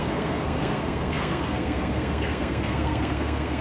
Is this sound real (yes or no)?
no